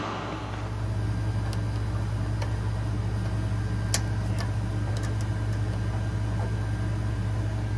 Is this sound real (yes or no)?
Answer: yes